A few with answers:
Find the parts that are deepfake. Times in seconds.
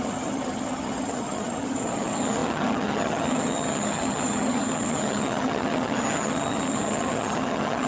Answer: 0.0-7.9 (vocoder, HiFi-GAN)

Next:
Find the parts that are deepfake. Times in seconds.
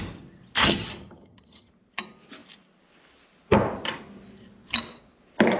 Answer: 0.6-1.7 (vocoder, HiFi-GAN)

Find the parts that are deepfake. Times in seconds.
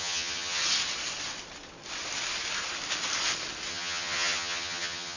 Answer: 0.0-0.6 (vocoder, HiFi-GAN); 3.7-5.2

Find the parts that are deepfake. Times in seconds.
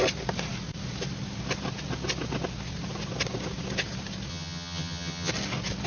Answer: 4.3-5.3 (vocoder, HiFi-GAN)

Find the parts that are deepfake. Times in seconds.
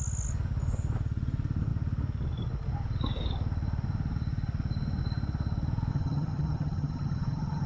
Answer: 5.9-7.7 (vocoder, HiFi-GAN)